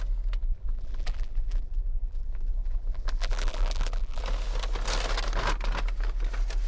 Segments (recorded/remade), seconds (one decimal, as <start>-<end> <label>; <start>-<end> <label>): 0.0-0.4 recorded; 0.4-4.2 remade; 4.2-6.7 recorded